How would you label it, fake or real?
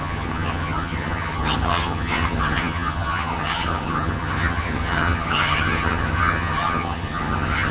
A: fake